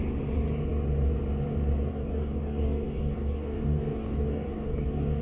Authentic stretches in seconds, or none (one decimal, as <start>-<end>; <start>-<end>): 0.0-1.9